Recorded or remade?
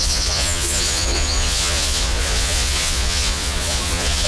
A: remade